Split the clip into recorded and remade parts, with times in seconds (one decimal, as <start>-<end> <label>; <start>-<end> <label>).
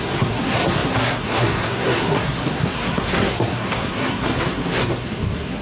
0.0-5.6 remade